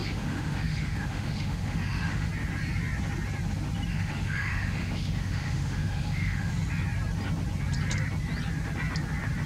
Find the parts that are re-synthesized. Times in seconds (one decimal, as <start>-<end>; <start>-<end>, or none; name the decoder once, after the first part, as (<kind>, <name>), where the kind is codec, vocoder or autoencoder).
0.0-2.3 (autoencoder, DAC-VAE); 3.9-6.5